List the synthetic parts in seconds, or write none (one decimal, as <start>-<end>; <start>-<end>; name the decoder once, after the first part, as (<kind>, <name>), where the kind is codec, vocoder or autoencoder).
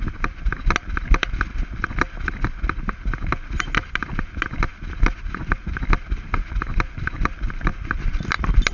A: none